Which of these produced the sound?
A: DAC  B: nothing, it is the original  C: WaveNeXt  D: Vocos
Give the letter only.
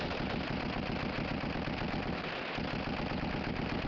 B